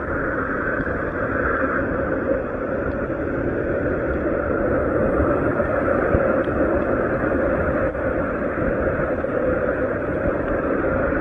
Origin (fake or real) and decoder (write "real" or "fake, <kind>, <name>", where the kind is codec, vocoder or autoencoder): fake, vocoder, BigVGAN v2